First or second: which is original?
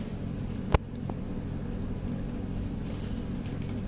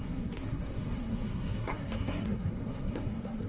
first